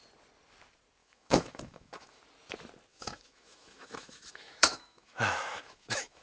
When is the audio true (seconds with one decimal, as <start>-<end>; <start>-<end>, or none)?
0.0-1.0; 2.2-2.9